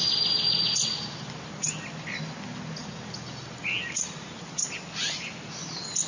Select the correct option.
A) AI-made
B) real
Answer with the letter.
B